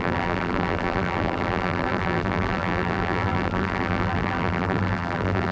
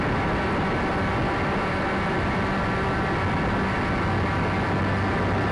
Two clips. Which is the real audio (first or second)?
second